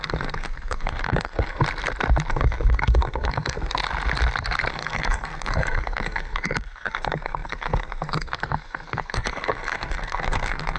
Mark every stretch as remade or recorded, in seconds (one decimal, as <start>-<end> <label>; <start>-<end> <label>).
0.0-1.6 remade; 1.6-2.3 recorded; 2.3-3.8 remade; 3.8-4.7 recorded; 4.7-10.8 remade